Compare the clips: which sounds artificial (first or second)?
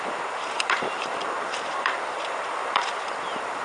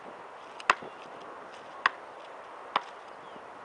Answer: first